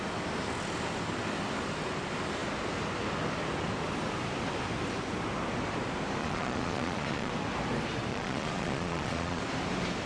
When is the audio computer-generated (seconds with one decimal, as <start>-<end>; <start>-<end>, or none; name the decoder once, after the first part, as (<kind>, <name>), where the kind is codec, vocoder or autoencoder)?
6.2-7.3 (vocoder, Vocos); 8.1-9.4